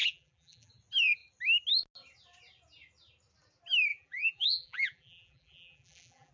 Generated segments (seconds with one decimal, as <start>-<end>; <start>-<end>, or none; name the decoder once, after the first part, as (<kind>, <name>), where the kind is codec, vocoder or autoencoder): 0.0-0.7 (vocoder, BigVGAN v2); 3.9-6.3